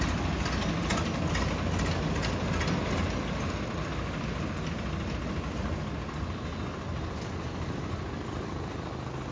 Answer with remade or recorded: recorded